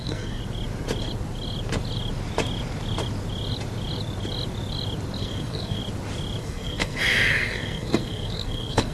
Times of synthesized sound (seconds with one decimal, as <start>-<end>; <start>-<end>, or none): 0.0-0.4; 5.2-5.8; 6.4-8.9